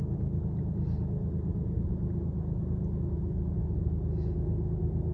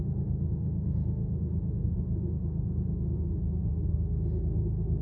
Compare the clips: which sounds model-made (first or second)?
second